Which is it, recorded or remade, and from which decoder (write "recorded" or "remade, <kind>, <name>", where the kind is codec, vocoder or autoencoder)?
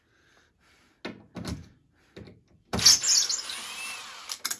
recorded